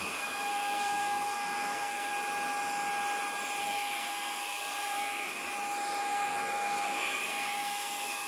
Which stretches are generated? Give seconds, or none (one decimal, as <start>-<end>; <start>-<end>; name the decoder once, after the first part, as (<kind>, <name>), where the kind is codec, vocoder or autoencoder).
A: 0.0-2.1 (codec, SNAC); 3.6-5.4; 6.0-8.3